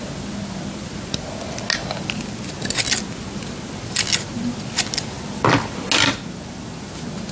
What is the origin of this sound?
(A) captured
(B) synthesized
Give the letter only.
A